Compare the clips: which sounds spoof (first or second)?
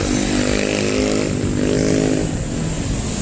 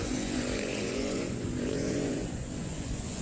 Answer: second